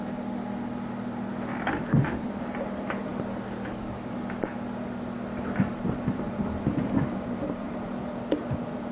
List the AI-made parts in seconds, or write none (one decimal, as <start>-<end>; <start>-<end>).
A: 5.7-7.9